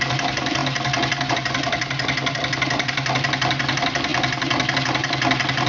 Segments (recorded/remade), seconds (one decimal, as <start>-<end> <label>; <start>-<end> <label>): 0.0-5.7 recorded